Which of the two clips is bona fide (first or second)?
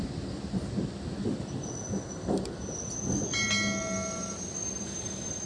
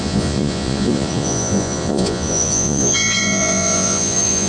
first